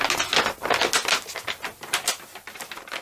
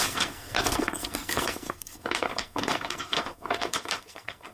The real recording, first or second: first